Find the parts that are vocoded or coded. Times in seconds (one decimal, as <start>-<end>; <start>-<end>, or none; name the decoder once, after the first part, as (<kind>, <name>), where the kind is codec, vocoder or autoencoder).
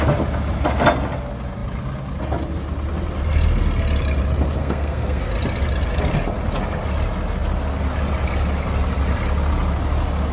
4.6-5.3 (codec, SNAC)